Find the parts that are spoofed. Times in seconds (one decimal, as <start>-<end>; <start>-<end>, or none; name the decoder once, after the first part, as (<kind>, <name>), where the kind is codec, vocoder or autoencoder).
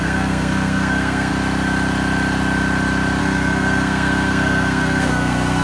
0.0-1.3 (codec, SNAC); 3.2-5.6